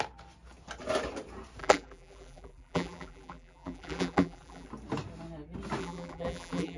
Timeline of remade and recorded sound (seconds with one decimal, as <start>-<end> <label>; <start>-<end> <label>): 0.0-1.6 recorded; 1.6-4.7 remade; 4.7-5.8 recorded; 5.8-6.8 remade